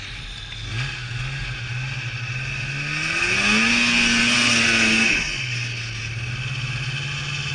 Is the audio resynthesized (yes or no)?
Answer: no